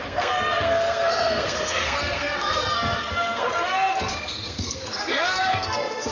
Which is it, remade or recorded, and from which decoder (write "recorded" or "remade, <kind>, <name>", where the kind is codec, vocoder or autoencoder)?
remade, codec, SNAC